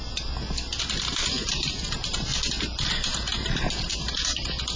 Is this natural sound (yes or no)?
yes